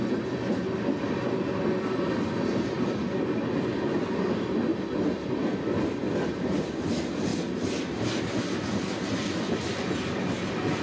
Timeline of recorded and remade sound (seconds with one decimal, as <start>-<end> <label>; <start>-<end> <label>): 0.0-10.8 recorded